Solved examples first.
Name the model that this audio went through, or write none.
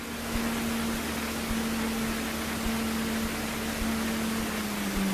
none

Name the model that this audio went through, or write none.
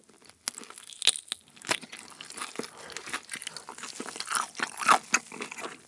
none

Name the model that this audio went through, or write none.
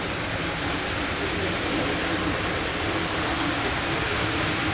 none